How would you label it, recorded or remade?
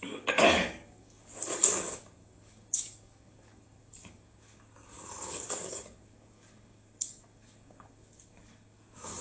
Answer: remade